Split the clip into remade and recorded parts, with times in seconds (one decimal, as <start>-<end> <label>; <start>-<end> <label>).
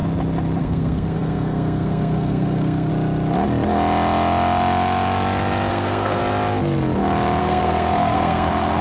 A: 0.0-0.6 recorded; 0.6-2.9 remade; 2.9-5.7 recorded; 5.7-6.2 remade; 6.2-7.4 recorded; 7.4-8.8 remade